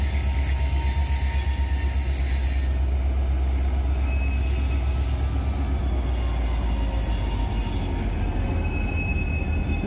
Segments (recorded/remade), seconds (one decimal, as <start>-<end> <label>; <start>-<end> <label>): 0.0-9.9 recorded